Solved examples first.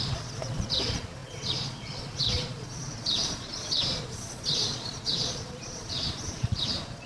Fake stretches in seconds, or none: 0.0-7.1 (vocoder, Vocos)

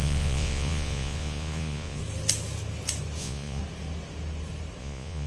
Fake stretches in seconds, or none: 0.0-2.0 (vocoder, Vocos); 3.2-3.6; 4.8-5.3

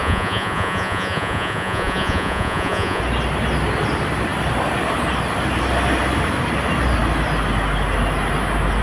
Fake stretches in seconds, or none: 0.0-3.0 (vocoder, Vocos)

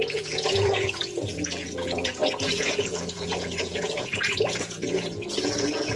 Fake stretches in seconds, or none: 0.0-6.0 (vocoder, Vocos)